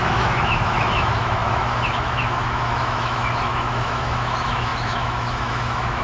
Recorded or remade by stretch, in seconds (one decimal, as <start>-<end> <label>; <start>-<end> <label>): 0.0-6.0 remade